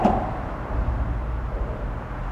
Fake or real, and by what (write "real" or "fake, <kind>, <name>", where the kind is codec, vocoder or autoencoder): real